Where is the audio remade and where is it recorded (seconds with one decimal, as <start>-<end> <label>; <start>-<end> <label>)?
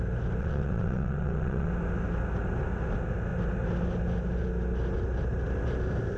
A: 0.0-0.4 recorded; 0.4-1.7 remade; 1.7-6.2 recorded